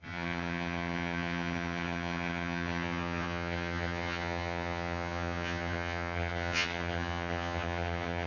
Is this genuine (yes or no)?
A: no